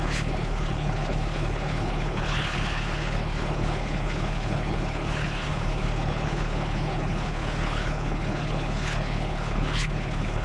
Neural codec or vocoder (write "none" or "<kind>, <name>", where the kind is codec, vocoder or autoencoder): codec, HILCodec